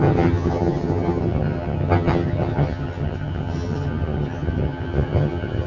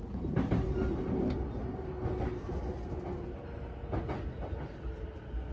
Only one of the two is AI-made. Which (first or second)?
first